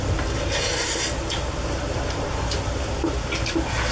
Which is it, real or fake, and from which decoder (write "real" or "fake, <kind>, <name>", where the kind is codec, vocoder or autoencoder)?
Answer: real